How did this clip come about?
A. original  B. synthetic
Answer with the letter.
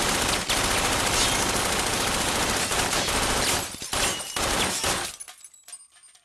A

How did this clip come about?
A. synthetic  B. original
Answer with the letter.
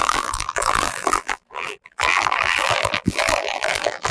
A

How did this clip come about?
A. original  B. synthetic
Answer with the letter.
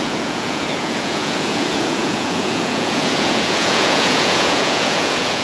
B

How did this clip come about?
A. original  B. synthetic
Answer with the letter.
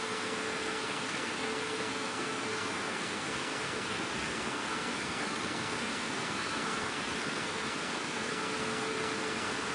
B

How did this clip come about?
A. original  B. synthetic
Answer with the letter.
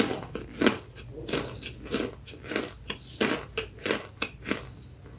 A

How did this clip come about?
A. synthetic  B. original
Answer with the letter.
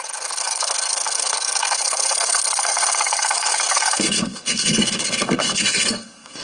A